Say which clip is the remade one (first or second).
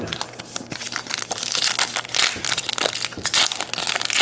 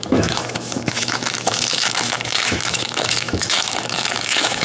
second